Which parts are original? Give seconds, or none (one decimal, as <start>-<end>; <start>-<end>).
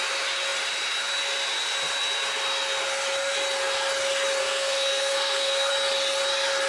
0.0-4.4; 5.7-6.7